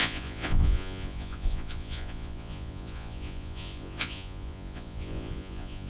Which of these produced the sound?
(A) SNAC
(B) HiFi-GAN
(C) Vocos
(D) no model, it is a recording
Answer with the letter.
C